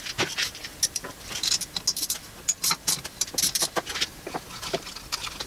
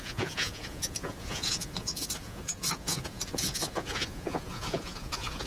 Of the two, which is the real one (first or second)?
first